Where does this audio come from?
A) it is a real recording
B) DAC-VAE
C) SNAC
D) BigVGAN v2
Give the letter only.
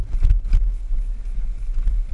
A